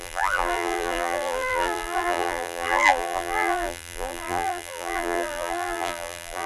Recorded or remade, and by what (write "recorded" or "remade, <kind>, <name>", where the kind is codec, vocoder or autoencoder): remade, vocoder, BigVGAN v2